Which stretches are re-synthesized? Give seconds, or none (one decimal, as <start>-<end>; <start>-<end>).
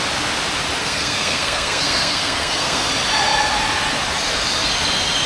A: 0.8-2.9